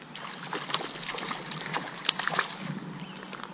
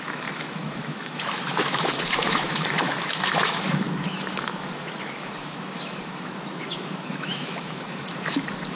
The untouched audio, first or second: first